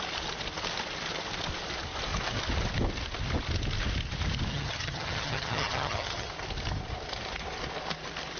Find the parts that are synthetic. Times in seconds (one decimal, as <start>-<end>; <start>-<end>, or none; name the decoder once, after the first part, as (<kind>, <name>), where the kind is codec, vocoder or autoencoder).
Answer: 4.5-6.3 (vocoder, HiFi-GAN)